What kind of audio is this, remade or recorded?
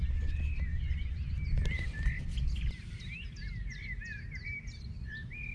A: recorded